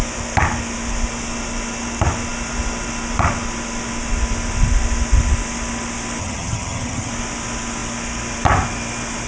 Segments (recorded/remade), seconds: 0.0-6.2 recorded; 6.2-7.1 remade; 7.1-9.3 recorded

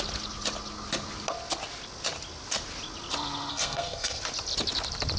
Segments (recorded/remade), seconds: 0.0-3.5 recorded; 3.5-4.2 remade; 4.2-5.2 recorded

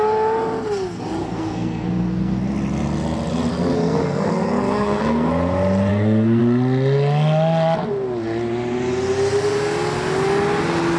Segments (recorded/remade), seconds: 0.0-1.2 recorded; 1.2-2.4 remade; 2.4-3.5 recorded; 3.5-5.3 remade; 5.3-5.9 recorded; 5.9-6.4 remade; 6.4-11.0 recorded

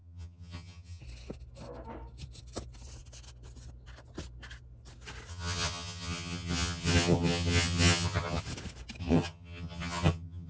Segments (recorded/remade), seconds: 0.0-1.0 remade; 1.0-5.3 recorded; 5.3-8.4 remade; 8.4-9.0 recorded; 9.0-10.5 remade

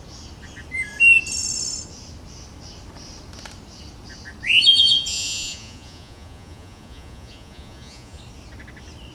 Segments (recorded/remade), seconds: 0.0-4.7 recorded; 4.7-8.2 remade; 8.2-9.1 recorded